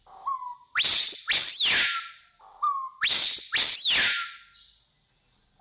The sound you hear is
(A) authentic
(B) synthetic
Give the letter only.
A